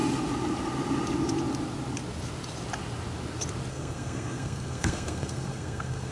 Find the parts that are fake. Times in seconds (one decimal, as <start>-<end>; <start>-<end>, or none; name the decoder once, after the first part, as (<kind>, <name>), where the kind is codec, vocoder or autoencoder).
3.7-6.1 (codec, SNAC)